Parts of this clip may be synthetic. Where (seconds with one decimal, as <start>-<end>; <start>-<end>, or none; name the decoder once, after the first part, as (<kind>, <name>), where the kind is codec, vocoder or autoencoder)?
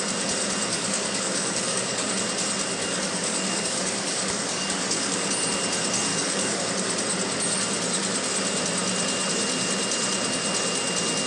0.7-2.1 (codec, DAC); 2.8-5.3; 6.1-6.6